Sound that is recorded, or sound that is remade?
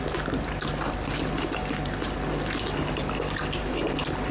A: recorded